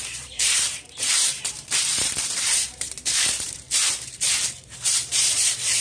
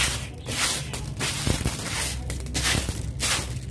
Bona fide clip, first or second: second